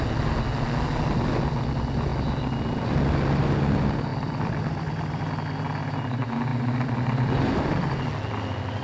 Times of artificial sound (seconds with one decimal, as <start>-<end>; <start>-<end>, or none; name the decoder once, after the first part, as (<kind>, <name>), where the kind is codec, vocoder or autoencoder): 4.1-5.2 (vocoder, BigVGAN v2); 6.5-8.1